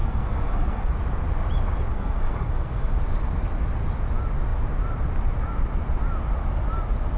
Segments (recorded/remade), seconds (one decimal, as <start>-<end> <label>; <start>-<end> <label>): 0.0-0.9 remade; 0.9-1.9 recorded; 1.9-2.9 remade; 2.9-7.2 recorded